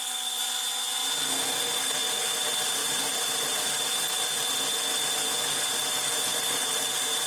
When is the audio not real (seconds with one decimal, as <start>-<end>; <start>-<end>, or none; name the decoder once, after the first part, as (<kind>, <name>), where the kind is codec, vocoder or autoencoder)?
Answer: 2.8-4.0 (vocoder, BigVGAN v2)